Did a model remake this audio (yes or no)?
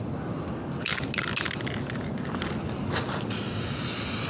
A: no